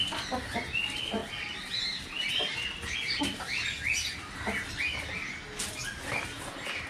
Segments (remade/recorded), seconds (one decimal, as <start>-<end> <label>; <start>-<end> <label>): 0.0-6.9 recorded

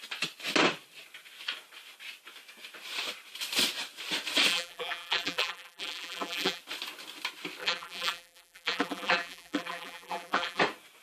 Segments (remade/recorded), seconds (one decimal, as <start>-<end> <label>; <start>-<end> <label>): 0.0-4.5 recorded; 4.5-6.6 remade; 6.6-7.6 recorded; 7.6-10.6 remade; 10.6-11.0 recorded